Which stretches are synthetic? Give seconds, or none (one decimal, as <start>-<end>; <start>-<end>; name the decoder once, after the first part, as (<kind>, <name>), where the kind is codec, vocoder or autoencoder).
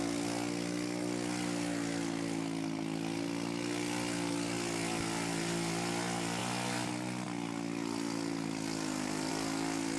none